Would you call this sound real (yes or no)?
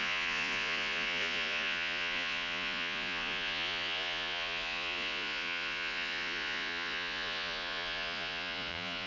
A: no